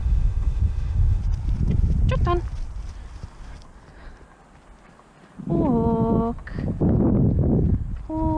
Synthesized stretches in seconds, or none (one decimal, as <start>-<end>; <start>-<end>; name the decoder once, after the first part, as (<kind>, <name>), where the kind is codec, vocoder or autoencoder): 0.0-1.2 (autoencoder, DAC-VAE)